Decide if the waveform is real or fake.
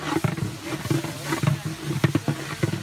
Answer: real